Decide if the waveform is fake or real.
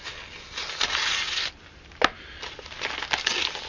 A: real